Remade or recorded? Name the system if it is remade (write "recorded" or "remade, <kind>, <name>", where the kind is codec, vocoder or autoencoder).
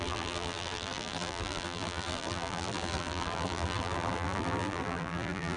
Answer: remade, vocoder, BigVGAN v2